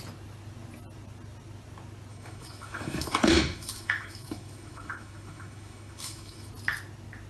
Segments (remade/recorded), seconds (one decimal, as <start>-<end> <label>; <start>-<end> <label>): 0.0-2.1 recorded; 2.1-6.5 remade; 6.5-7.3 recorded